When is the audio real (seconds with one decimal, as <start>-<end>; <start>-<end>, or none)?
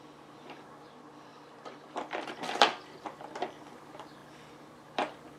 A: 0.0-1.3; 3.2-5.4